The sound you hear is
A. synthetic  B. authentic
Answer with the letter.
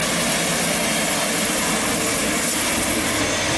B